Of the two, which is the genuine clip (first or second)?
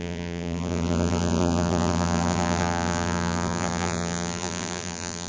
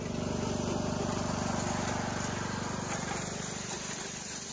second